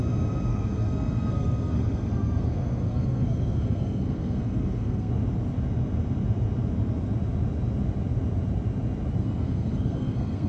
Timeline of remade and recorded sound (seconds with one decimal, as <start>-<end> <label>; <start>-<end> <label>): 0.0-0.5 recorded; 0.5-5.1 remade; 5.1-9.2 recorded; 9.2-10.5 remade